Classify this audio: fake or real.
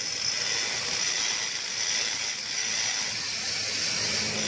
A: real